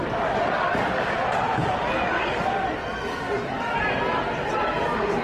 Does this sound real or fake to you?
real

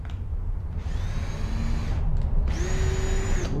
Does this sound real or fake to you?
real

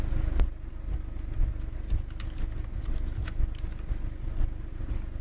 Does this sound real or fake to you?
real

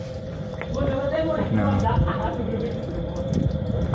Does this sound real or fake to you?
fake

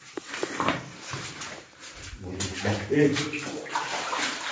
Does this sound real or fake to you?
fake